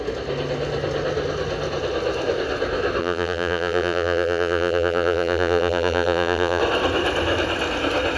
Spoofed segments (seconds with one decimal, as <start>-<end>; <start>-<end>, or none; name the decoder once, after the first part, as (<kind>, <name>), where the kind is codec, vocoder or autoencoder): 3.0-6.6 (vocoder, BigVGAN v2)